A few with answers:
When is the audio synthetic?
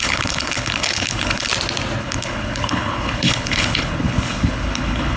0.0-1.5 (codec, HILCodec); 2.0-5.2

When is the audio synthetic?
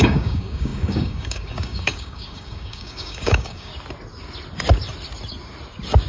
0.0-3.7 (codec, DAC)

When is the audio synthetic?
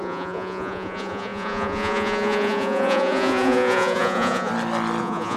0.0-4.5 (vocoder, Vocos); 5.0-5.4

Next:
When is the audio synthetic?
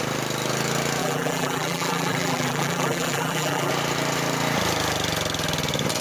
1.0-3.7 (vocoder, BigVGAN v2)